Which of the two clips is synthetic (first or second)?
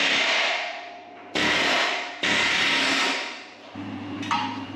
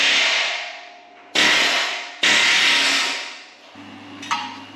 first